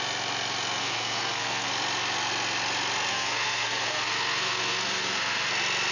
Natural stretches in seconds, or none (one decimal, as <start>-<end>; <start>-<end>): 0.0-0.8; 1.7-3.1; 5.5-5.9